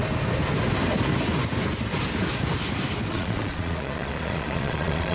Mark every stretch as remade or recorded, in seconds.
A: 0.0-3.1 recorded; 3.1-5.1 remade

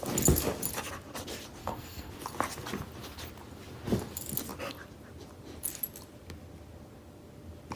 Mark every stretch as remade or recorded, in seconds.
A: 0.0-1.6 recorded; 1.6-2.1 remade; 2.1-7.8 recorded

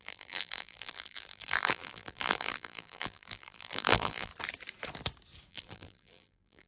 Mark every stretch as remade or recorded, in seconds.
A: 0.0-4.3 remade; 4.3-5.5 recorded; 5.5-6.7 remade

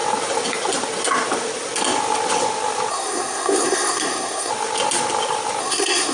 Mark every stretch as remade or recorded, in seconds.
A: 0.0-2.9 recorded; 2.9-4.5 remade; 4.5-5.6 recorded; 5.6-6.1 remade

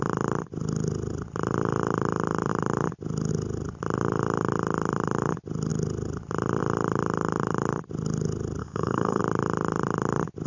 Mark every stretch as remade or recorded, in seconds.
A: 0.0-8.6 recorded; 8.6-9.2 remade; 9.2-10.5 recorded

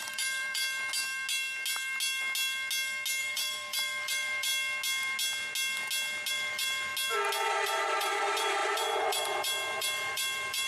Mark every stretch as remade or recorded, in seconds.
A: 0.0-0.6 remade; 0.6-3.2 recorded; 3.2-4.5 remade; 4.5-6.3 recorded; 6.3-6.9 remade; 6.9-7.5 recorded; 7.5-10.7 remade